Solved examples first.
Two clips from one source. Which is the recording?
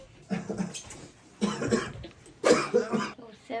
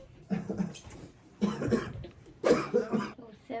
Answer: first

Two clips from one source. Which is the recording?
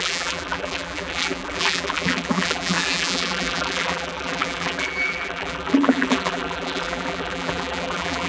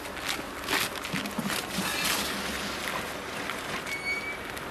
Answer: second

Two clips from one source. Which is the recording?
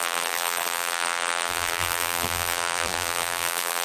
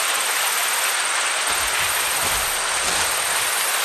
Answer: second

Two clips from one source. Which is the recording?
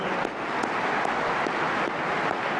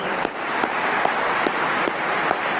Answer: first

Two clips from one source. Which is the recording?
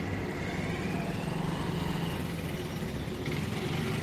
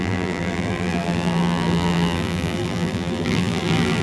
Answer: first